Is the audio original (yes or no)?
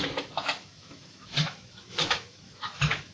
no